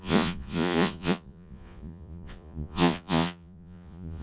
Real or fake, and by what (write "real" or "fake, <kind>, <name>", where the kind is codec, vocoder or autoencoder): fake, vocoder, Vocos